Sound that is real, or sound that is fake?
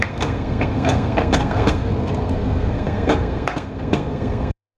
fake